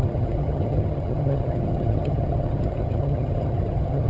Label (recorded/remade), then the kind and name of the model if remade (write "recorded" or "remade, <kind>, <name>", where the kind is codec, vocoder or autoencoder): remade, vocoder, HiFi-GAN